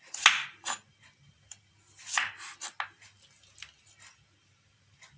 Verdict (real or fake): real